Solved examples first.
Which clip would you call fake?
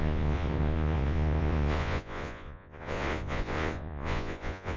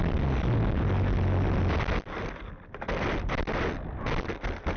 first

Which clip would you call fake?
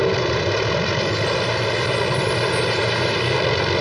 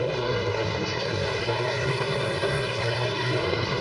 second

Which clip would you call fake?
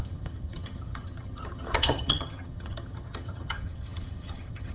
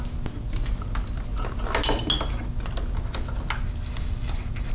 first